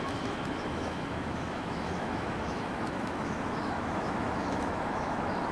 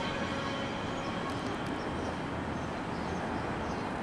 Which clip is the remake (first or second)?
first